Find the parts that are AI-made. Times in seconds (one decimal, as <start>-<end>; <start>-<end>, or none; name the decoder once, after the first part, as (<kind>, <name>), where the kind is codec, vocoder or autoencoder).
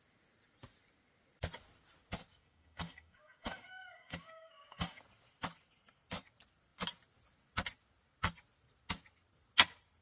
2.4-5.0 (codec, DAC)